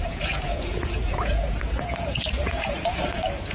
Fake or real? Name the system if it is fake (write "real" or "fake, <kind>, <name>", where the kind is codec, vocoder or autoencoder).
fake, vocoder, Vocos